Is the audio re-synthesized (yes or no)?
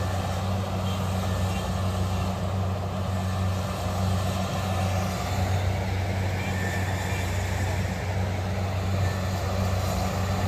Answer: no